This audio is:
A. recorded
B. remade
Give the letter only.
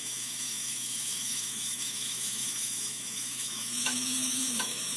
B